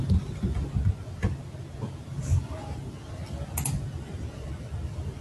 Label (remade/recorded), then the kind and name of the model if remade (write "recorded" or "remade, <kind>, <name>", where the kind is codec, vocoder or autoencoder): recorded